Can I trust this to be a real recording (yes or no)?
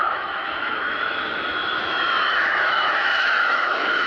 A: no